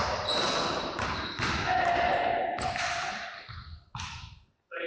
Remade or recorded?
recorded